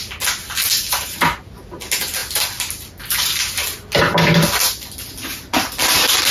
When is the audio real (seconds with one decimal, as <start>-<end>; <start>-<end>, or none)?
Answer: 0.0-6.3